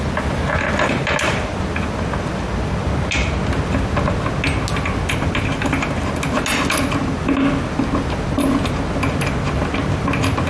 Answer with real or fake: real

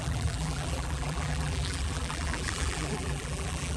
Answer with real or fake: fake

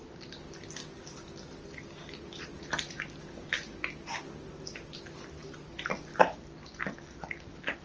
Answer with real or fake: real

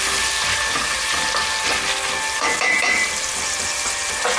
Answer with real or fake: real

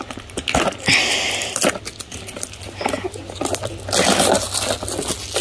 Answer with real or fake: real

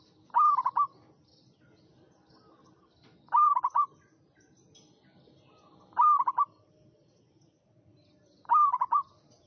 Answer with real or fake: fake